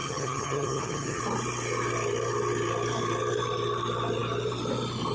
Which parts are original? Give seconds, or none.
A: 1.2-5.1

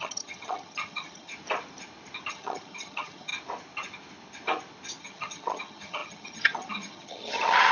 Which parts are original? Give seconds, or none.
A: 1.3-2.3; 3.3-5.0

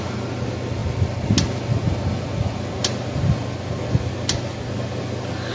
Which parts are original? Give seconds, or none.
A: 0.0-5.5